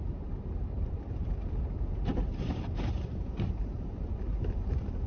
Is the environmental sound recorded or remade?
remade